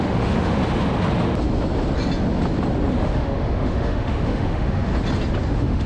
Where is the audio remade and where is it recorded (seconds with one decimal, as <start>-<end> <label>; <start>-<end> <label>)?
0.0-0.6 remade; 0.6-2.9 recorded; 2.9-4.9 remade; 4.9-5.5 recorded; 5.5-5.9 remade